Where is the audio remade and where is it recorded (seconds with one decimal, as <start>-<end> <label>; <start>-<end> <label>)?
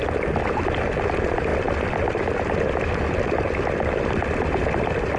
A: 0.0-5.2 recorded